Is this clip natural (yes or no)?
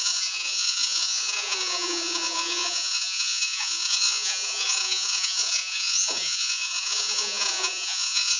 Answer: no